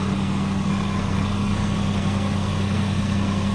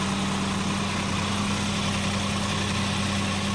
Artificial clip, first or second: first